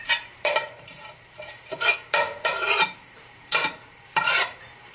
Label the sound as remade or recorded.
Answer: remade